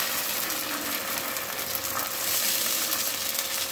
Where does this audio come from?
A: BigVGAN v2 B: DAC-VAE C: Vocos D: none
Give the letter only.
D